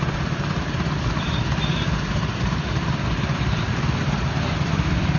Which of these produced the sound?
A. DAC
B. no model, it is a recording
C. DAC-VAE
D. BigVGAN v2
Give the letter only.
D